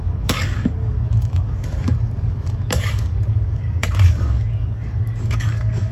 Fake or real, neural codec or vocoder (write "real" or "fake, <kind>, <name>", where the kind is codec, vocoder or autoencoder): fake, codec, DAC